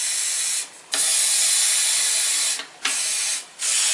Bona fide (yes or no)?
yes